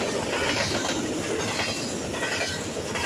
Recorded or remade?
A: recorded